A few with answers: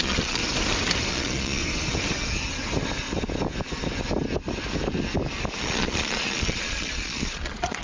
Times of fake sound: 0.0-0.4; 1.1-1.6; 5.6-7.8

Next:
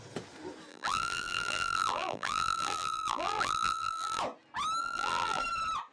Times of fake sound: 0.7-4.2; 4.8-5.4

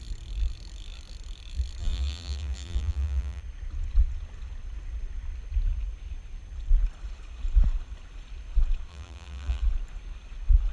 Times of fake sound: 1.8-3.4; 8.9-9.6

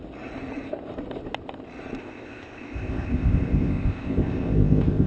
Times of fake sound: 2.0-5.1

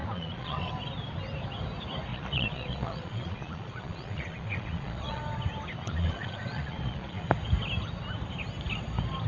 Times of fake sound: 0.0-0.7; 2.1-5.2; 5.8-7.3

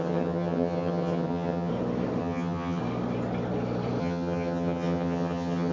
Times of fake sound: 0.0-1.7; 2.2-2.8; 4.0-5.7

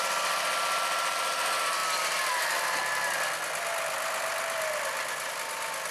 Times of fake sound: none